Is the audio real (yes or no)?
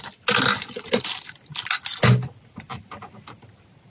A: yes